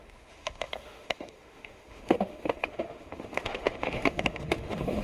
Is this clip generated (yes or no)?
yes